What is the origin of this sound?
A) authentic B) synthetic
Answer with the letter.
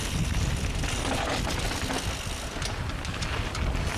A